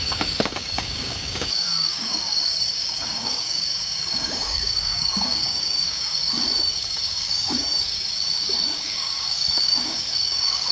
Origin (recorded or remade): remade